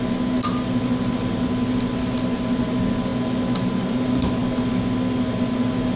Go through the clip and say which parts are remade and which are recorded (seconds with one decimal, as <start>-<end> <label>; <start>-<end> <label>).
0.0-6.0 recorded